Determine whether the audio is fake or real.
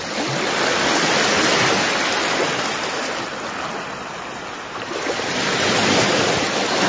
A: real